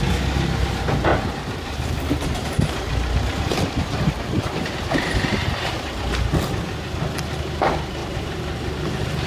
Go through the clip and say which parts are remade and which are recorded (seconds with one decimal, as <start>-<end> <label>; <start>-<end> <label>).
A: 0.0-1.1 recorded; 1.1-6.2 remade; 6.2-8.0 recorded; 8.0-8.7 remade; 8.7-9.3 recorded